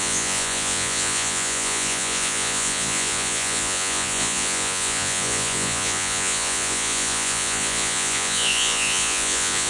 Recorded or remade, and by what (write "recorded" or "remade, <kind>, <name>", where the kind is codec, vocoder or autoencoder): remade, vocoder, Vocos